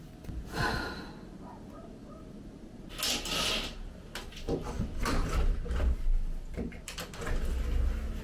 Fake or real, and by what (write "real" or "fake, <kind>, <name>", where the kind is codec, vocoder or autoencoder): real